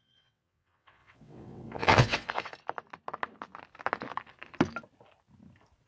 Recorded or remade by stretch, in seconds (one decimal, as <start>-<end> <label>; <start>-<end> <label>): 0.0-2.5 remade; 2.5-5.9 recorded